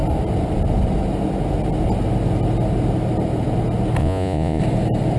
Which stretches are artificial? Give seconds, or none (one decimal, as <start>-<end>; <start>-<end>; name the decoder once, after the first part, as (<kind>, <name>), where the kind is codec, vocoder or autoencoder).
4.0-4.6 (vocoder, Vocos)